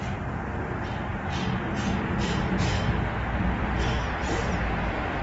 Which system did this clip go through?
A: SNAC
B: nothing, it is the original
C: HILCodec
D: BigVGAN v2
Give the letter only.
B